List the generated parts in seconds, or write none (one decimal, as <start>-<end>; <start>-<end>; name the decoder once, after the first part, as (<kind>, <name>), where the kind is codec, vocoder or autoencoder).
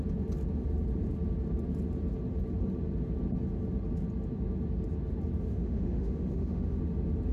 5.5-6.8 (autoencoder, DAC-VAE)